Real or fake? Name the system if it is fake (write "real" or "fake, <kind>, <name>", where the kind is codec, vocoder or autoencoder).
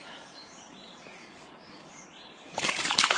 fake, codec, DAC